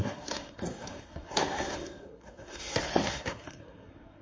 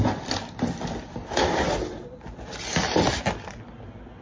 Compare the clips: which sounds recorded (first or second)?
second